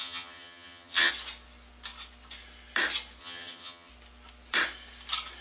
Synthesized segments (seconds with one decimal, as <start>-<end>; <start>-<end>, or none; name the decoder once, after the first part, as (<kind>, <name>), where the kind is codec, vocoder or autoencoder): 0.0-1.1 (vocoder, HiFi-GAN); 3.2-3.9

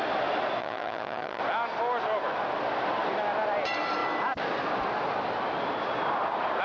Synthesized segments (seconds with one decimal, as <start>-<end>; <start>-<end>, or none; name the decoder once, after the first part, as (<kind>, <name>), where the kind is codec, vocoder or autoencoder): 0.6-1.4 (vocoder, HiFi-GAN)

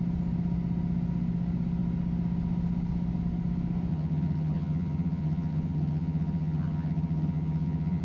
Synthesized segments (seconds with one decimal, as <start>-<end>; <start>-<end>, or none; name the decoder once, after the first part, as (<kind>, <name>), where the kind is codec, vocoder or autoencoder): 3.9-8.0 (vocoder, HiFi-GAN)

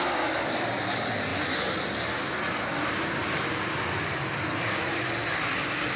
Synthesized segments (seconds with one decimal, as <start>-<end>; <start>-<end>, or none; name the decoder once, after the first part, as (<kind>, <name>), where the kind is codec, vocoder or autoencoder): none

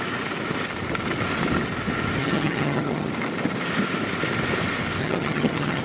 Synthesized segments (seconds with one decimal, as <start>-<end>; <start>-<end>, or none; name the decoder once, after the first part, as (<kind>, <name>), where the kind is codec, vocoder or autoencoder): 2.2-3.1 (vocoder, HiFi-GAN); 5.0-5.8

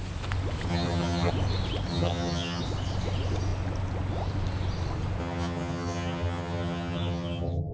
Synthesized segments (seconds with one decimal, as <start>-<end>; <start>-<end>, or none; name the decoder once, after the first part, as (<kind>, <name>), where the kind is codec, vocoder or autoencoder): 0.7-1.3 (vocoder, HiFi-GAN); 1.9-2.6; 5.2-7.7

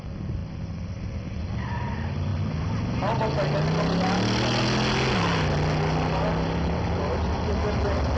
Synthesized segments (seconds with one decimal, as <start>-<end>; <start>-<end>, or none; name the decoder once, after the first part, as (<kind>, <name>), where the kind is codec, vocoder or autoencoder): none

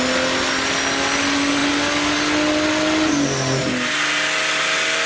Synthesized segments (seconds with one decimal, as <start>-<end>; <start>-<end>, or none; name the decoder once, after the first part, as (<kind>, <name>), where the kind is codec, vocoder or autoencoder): none